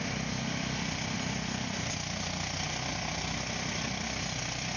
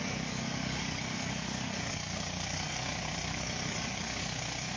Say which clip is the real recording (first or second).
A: first